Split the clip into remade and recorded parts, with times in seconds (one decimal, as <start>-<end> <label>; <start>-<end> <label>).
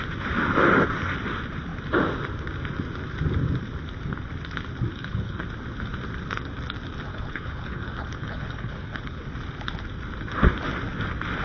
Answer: 0.0-4.9 recorded; 4.9-5.4 remade; 5.4-7.1 recorded; 7.1-9.2 remade; 9.2-11.4 recorded